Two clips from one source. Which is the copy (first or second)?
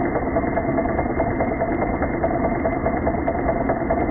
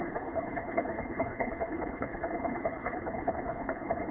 second